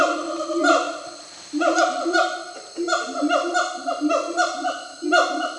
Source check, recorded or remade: recorded